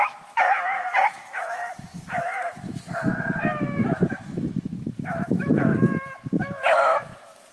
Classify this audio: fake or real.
fake